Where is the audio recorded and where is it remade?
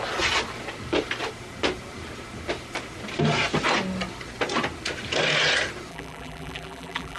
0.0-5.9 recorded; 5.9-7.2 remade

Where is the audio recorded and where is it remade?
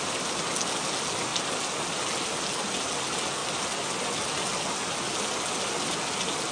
0.0-6.5 recorded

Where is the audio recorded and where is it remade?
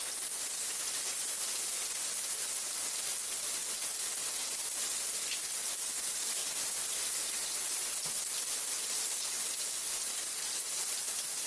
0.0-6.4 recorded; 6.4-9.4 remade; 9.4-11.5 recorded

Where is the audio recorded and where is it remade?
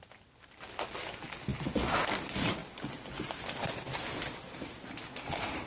0.0-5.7 recorded